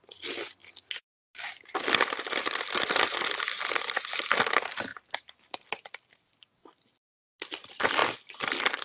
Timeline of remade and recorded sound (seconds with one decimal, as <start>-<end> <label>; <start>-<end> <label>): 0.0-8.8 recorded